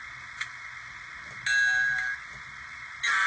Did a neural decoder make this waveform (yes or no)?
no